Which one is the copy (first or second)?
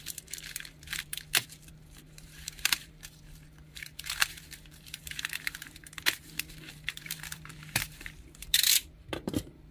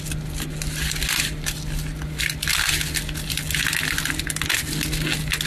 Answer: first